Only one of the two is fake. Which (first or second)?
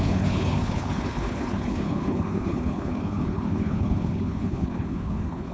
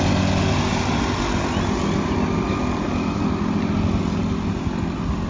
first